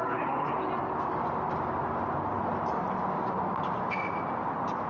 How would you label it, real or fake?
real